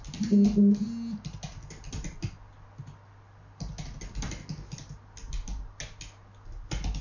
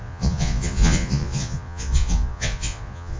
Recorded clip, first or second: first